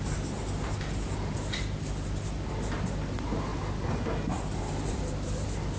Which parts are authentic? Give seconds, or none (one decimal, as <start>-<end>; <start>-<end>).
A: 0.0-5.8

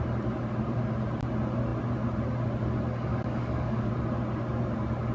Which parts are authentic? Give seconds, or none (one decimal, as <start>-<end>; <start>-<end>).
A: 0.0-3.1; 3.9-5.1

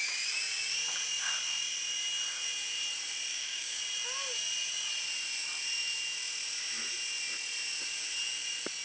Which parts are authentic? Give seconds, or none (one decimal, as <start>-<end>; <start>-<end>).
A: 0.0-3.3; 3.8-8.8

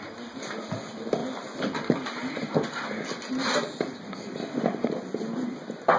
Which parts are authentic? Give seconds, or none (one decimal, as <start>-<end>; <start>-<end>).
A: 0.0-6.0

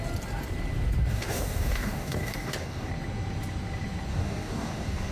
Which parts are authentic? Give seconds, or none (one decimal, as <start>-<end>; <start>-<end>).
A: 0.0-1.1; 2.9-4.1

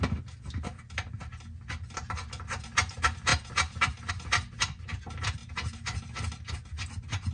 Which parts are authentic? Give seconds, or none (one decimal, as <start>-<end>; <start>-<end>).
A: 0.0-7.3

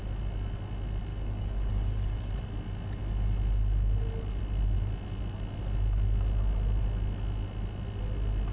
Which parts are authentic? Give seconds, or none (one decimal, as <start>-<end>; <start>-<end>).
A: 0.0-1.1; 2.3-8.5